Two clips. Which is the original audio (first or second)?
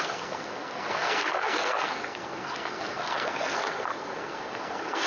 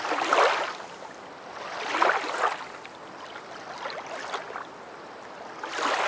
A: second